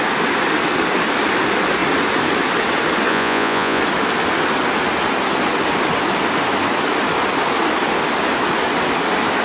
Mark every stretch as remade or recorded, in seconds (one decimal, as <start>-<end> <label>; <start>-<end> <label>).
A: 0.0-3.1 recorded; 3.1-3.8 remade; 3.8-9.4 recorded